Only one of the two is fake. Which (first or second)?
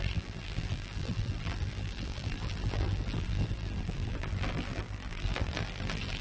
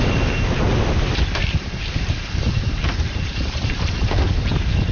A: first